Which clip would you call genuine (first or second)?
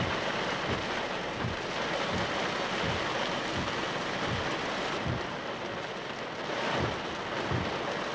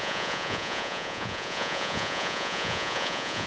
first